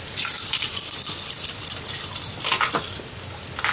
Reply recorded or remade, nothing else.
recorded